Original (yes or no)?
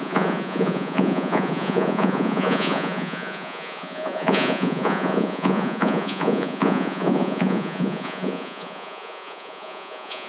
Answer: no